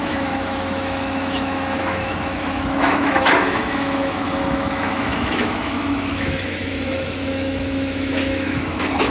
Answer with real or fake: fake